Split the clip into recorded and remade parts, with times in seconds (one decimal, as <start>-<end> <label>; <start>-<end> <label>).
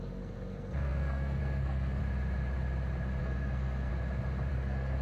0.0-2.0 remade; 2.0-3.2 recorded; 3.2-3.9 remade; 3.9-4.5 recorded; 4.5-5.0 remade